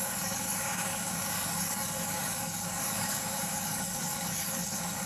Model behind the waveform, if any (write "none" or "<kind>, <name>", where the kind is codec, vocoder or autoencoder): codec, DAC